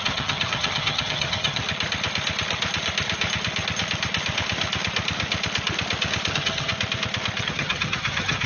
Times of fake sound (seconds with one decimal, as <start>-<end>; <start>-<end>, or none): 0.0-1.6; 6.3-6.7; 7.4-8.5